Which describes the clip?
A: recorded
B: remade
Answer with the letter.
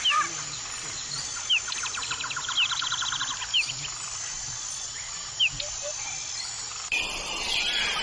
B